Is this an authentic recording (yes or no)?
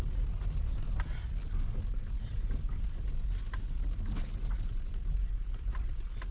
yes